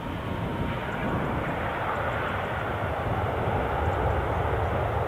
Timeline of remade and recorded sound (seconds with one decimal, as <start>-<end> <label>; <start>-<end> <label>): 0.0-5.1 recorded